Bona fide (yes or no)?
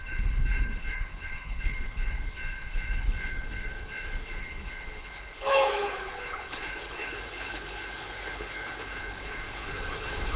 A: no